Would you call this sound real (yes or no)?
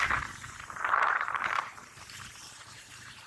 no